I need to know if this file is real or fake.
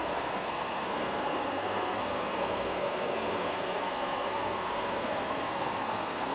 fake